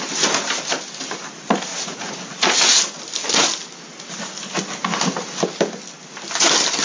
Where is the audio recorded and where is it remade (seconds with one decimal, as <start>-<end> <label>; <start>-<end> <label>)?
0.0-1.7 recorded; 1.7-2.8 remade; 2.8-6.8 recorded